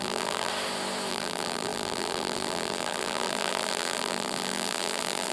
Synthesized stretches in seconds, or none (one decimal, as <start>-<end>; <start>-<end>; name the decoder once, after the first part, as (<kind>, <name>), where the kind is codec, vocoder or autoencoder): 0.0-0.5 (vocoder, BigVGAN v2); 1.1-5.3